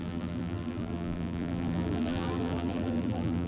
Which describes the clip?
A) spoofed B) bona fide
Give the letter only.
A